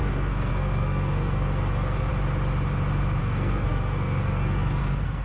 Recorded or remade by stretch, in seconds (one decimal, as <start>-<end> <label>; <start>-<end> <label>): 0.0-2.1 remade; 2.1-3.2 recorded; 3.2-5.2 remade